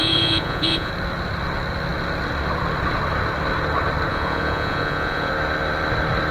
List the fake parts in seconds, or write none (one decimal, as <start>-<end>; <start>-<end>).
0.0-0.9; 4.1-5.3